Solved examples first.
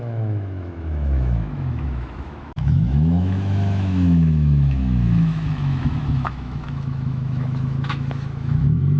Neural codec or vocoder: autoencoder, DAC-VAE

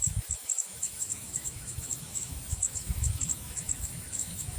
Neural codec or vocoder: autoencoder, DAC-VAE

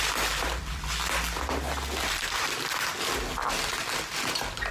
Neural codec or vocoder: none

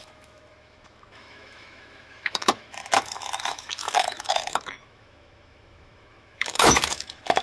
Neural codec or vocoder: autoencoder, DAC-VAE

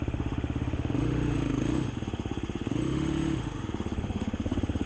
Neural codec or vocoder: autoencoder, DAC-VAE